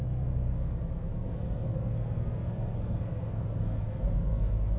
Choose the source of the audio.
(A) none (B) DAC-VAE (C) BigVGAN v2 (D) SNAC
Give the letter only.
D